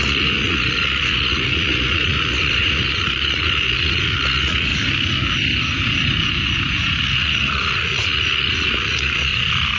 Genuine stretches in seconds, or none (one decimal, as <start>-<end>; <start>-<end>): 4.7-7.0; 9.3-9.8